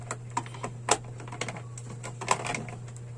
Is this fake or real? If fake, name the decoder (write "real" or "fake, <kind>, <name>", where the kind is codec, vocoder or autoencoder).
real